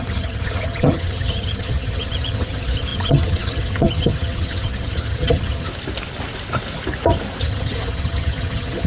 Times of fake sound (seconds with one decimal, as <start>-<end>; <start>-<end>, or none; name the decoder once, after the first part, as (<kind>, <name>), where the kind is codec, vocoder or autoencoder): 0.0-5.7 (vocoder, HiFi-GAN); 7.4-8.9